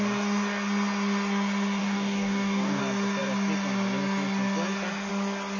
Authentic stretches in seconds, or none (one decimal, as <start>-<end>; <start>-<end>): 0.0-1.8; 2.8-5.6